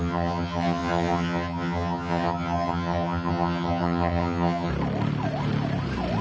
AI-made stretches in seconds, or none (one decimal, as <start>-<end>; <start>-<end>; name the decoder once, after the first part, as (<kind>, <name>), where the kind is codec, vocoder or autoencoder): 0.0-4.7 (vocoder, HiFi-GAN)